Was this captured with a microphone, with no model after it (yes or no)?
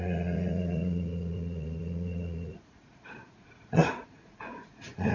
no